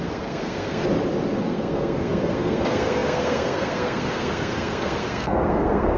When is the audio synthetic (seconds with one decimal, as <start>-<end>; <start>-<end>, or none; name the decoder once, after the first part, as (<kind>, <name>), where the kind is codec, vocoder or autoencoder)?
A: 0.0-0.8 (codec, SNAC); 1.4-6.0